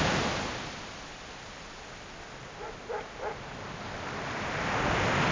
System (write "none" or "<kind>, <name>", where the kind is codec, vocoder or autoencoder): none